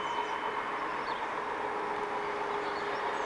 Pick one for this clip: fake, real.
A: real